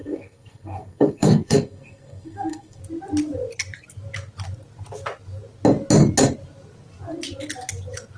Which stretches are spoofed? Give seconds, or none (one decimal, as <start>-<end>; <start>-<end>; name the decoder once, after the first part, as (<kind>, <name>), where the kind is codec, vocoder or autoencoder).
0.0-2.8 (codec, SNAC)